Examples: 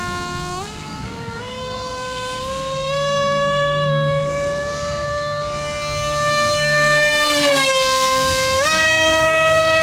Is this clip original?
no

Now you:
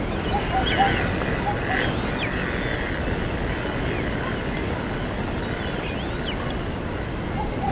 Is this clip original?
yes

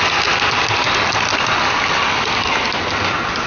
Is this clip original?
yes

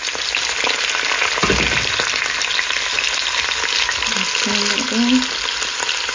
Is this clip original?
yes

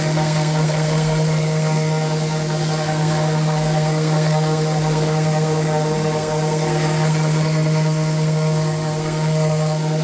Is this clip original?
no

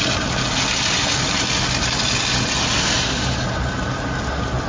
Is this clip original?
yes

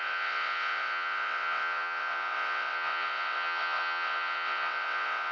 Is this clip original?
no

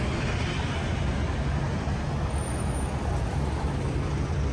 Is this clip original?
yes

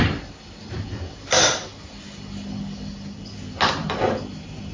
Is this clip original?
yes